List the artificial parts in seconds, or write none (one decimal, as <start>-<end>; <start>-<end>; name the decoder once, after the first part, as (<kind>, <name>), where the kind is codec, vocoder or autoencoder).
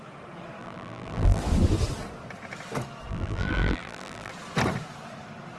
0.6-1.4 (vocoder, BigVGAN v2); 3.1-4.3